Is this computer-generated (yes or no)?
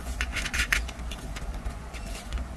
yes